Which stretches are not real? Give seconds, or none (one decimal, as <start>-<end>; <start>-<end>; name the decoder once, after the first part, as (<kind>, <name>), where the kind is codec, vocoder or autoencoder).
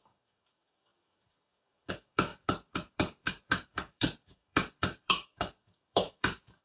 0.0-6.6 (codec, DAC)